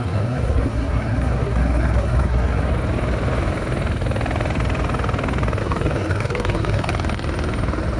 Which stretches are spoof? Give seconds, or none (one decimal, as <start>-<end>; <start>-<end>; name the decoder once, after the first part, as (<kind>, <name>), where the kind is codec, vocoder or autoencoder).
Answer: 0.0-2.7 (codec, SNAC); 5.6-6.9